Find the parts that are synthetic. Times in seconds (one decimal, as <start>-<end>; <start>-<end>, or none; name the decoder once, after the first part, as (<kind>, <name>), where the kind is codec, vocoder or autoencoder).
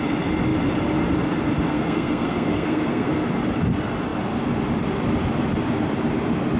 1.7-3.1 (codec, SNAC)